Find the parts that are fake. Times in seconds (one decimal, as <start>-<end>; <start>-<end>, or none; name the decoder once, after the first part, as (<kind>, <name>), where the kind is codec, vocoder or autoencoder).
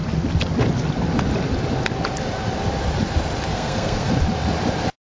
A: 3.5-4.1 (codec, SNAC)